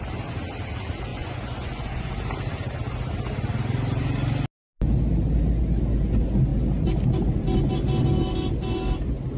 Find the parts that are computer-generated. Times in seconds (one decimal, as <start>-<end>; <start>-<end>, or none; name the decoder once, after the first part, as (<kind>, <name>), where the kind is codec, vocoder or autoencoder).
1.1-2.1 (vocoder, Vocos)